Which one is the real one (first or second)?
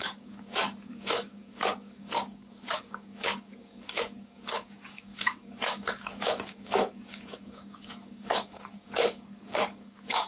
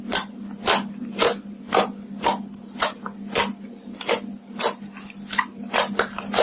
second